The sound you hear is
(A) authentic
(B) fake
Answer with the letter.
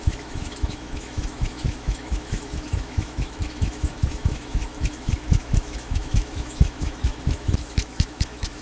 B